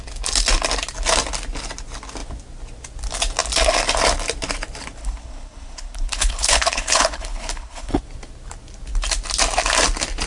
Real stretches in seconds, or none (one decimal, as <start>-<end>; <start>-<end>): 0.0-5.0; 8.0-10.3